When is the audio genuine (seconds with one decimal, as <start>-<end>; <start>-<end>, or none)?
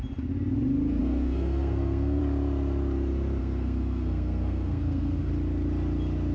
0.0-1.0; 2.2-3.4; 5.3-6.3